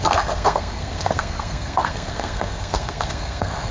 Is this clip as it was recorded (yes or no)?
no